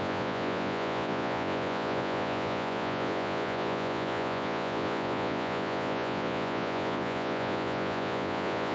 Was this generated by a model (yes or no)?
yes